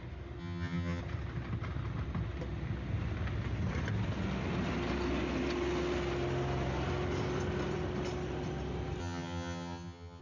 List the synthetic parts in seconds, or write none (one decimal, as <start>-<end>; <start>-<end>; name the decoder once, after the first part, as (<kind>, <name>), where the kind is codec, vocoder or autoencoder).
0.4-1.0 (vocoder, HiFi-GAN); 9.0-10.2